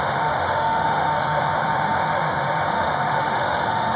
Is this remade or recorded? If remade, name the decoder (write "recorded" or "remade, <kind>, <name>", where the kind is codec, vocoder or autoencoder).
remade, autoencoder, DAC-VAE